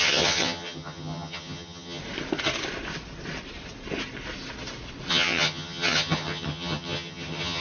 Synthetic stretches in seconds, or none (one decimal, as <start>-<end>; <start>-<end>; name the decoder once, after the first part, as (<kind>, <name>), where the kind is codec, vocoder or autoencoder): 0.0-2.0 (vocoder, HiFi-GAN); 5.1-7.6